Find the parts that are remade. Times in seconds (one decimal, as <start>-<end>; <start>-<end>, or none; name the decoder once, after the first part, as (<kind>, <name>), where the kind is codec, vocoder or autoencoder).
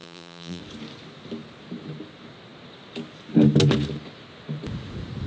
0.0-0.6 (vocoder, BigVGAN v2)